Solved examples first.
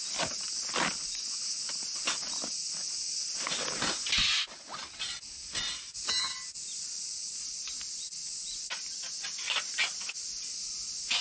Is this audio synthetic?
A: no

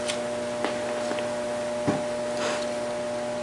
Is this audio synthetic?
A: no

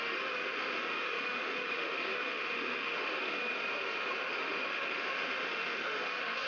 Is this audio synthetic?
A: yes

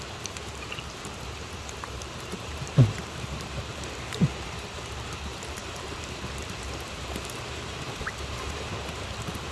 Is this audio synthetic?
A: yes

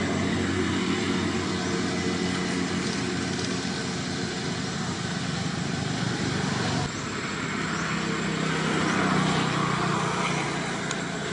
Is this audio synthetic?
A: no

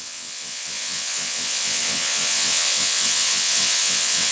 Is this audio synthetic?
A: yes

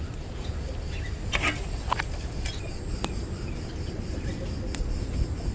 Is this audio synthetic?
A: no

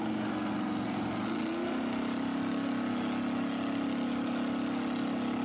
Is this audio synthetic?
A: no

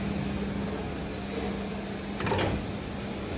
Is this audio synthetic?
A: no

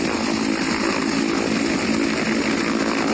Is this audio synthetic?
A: no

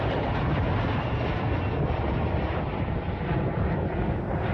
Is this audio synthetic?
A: no